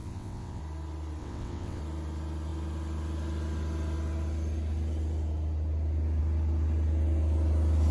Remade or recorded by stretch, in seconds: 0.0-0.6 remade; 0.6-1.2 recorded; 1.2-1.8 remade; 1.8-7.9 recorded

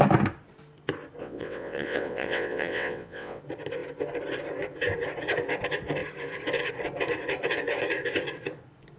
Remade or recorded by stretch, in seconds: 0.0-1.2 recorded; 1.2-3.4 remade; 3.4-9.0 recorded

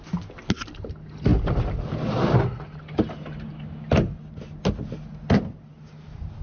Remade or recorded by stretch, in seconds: 0.0-6.4 recorded

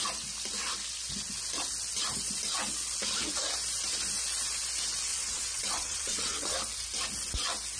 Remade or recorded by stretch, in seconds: 0.0-5.1 recorded; 5.1-6.6 remade; 6.6-7.8 recorded

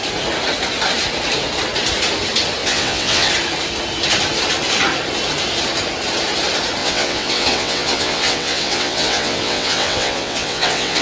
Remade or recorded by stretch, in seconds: 0.0-2.6 recorded; 2.6-3.3 remade; 3.3-6.8 recorded; 6.8-11.0 remade

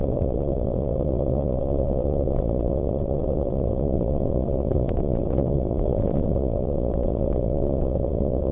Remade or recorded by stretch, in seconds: 0.0-8.5 remade